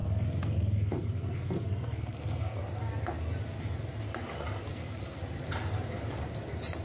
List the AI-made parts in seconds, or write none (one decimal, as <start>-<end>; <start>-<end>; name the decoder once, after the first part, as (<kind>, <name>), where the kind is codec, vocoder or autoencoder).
0.0-2.6 (codec, SNAC); 4.7-5.2